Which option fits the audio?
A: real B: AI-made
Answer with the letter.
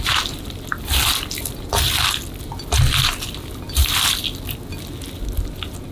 A